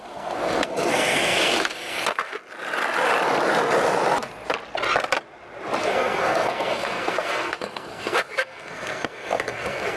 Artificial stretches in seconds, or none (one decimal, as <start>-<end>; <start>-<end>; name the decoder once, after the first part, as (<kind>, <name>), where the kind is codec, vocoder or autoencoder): 0.0-2.4 (codec, SNAC); 5.8-10.0